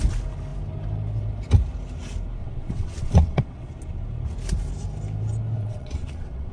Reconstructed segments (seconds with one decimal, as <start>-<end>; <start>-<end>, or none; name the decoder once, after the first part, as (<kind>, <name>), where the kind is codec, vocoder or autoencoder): 2.4-3.7 (vocoder, WaveNeXt); 5.6-6.5